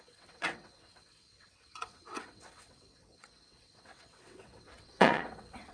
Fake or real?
fake